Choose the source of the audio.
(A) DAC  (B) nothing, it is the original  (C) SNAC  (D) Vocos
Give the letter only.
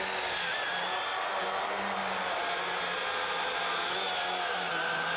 B